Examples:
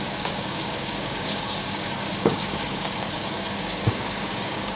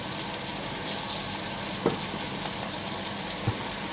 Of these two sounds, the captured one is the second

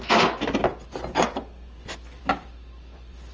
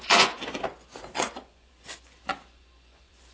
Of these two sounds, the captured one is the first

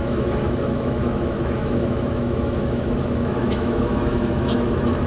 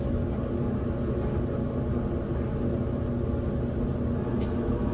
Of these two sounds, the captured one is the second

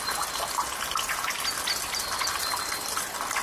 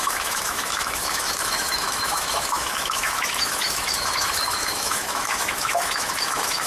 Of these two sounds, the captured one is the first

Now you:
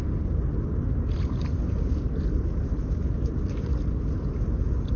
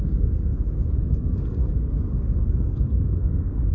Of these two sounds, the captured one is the first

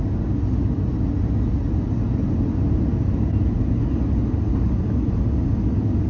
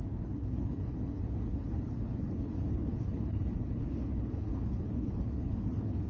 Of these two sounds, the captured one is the first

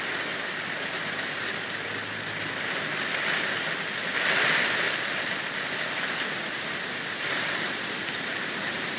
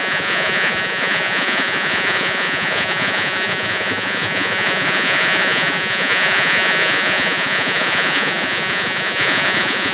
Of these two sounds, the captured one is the first